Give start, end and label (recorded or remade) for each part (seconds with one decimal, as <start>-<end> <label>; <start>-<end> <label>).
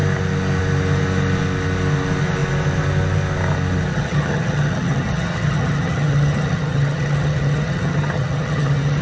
0.0-3.9 recorded; 3.9-9.0 remade